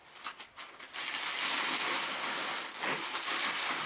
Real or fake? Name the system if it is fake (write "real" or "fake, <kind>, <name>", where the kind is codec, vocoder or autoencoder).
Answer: real